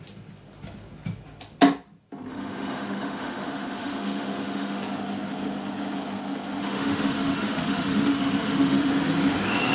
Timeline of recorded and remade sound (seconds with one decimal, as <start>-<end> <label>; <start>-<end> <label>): 0.0-2.3 recorded; 2.3-4.8 remade; 4.8-6.6 recorded; 6.6-8.9 remade; 8.9-9.7 recorded